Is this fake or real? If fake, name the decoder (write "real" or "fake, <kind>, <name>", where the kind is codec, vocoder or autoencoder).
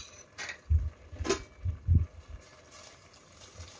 real